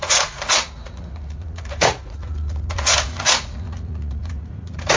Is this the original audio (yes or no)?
no